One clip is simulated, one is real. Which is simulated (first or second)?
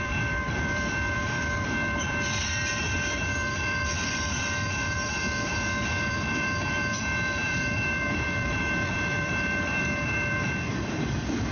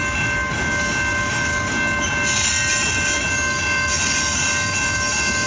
first